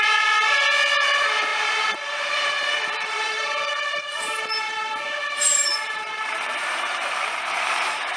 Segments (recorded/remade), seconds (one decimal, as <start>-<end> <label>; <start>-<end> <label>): 0.0-4.1 remade; 4.1-5.2 recorded; 5.2-8.2 remade